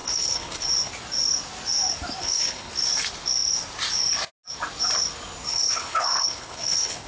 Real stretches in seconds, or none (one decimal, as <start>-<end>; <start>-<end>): 0.7-2.2; 2.7-5.5